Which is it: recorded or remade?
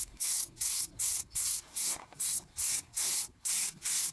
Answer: remade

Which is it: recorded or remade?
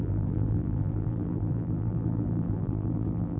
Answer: remade